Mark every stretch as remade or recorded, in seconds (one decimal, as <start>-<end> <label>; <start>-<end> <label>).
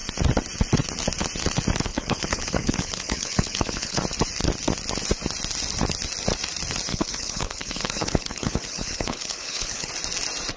0.0-1.9 recorded; 1.9-4.0 remade; 4.0-6.9 recorded; 6.9-9.9 remade; 9.9-10.6 recorded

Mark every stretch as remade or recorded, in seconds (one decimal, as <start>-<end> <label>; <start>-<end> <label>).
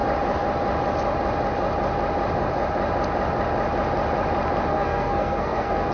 0.0-4.7 recorded; 4.7-5.9 remade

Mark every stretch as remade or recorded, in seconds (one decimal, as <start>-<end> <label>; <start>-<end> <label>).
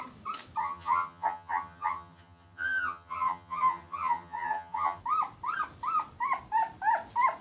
0.0-0.6 recorded; 0.6-5.0 remade; 5.0-7.4 recorded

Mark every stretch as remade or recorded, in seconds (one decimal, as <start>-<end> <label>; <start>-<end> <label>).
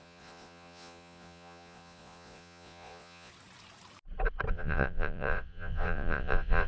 0.0-3.3 remade; 3.3-4.5 recorded; 4.5-6.7 remade